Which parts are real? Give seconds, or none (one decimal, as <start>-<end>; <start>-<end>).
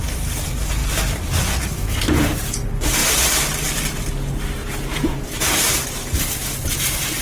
0.0-4.6; 5.6-7.2